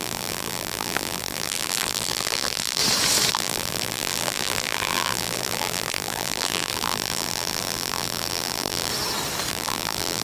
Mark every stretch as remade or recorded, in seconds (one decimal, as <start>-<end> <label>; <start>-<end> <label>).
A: 0.0-2.8 remade; 2.8-3.3 recorded; 3.3-8.9 remade; 8.9-9.5 recorded; 9.5-10.2 remade